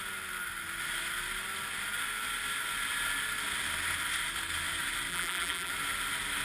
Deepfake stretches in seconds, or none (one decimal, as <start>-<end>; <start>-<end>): 5.1-5.7